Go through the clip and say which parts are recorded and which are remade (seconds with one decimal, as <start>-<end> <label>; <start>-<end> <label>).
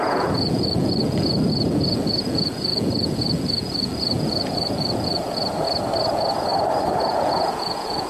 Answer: 0.0-5.4 remade; 5.4-6.1 recorded; 6.1-6.5 remade; 6.5-7.0 recorded; 7.0-8.1 remade